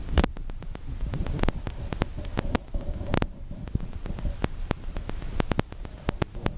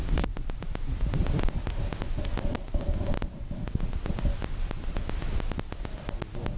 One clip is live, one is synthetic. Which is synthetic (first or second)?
first